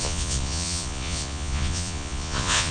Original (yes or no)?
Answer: no